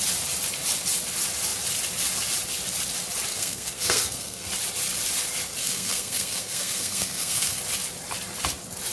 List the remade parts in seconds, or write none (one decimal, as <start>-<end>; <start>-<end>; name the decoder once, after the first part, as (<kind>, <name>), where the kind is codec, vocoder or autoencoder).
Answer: 3.3-4.5 (codec, SNAC); 5.6-7.6